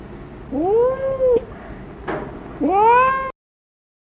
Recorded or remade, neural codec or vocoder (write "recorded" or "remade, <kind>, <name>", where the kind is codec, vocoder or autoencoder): recorded